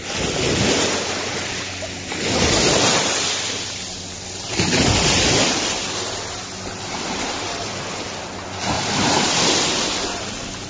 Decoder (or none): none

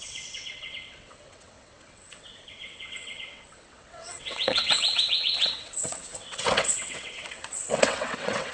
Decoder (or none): vocoder, WaveNeXt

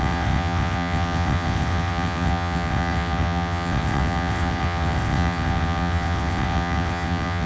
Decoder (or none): vocoder, WaveNeXt